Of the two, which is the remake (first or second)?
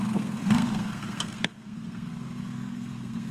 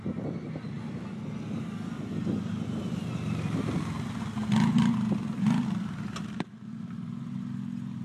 first